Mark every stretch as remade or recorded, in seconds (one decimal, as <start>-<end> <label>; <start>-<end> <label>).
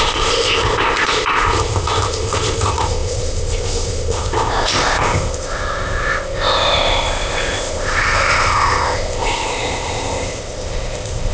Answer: 0.0-11.3 remade